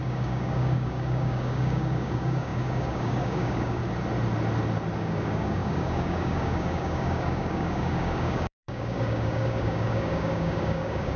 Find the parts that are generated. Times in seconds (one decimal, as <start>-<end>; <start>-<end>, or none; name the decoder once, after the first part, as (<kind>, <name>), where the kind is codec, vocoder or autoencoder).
0.0-3.8 (codec, DAC); 5.0-11.2